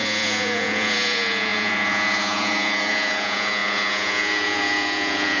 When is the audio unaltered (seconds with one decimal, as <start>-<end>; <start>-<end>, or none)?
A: none